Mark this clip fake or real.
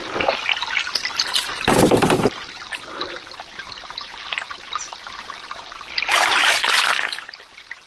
real